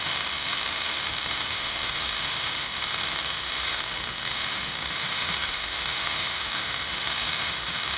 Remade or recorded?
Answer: remade